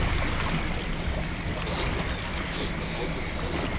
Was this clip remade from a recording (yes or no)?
no